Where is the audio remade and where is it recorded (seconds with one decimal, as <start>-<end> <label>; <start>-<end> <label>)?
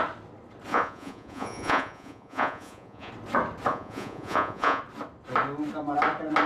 0.0-0.7 recorded; 0.7-3.1 remade; 3.1-3.7 recorded; 3.7-4.8 remade; 4.8-6.5 recorded